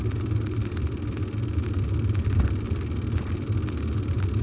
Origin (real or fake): real